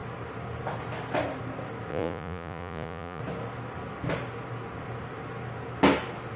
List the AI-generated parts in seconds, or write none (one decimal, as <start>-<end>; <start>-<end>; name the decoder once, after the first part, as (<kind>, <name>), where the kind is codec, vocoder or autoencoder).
1.9-3.2 (vocoder, Vocos)